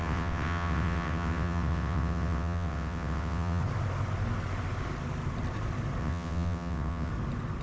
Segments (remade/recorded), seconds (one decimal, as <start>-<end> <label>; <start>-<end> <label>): 0.0-3.6 remade; 3.6-6.0 recorded; 6.0-7.1 remade; 7.1-7.6 recorded